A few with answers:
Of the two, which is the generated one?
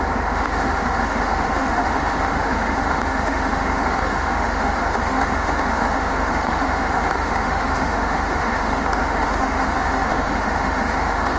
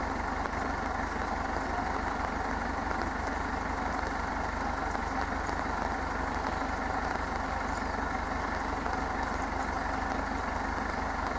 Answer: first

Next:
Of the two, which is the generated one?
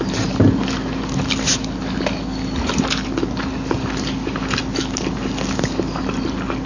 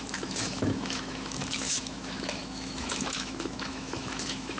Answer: second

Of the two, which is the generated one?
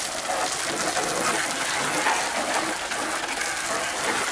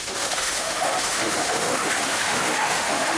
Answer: second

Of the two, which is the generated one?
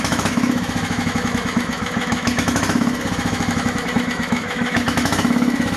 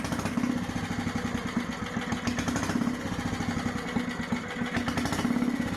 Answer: first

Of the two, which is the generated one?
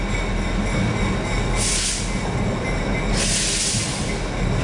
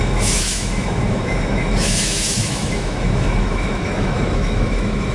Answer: second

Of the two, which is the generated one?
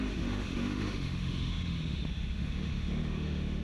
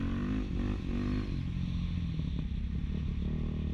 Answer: first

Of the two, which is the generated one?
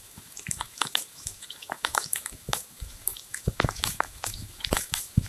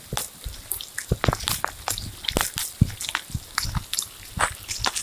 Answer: first